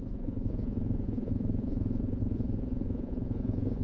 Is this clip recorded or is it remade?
remade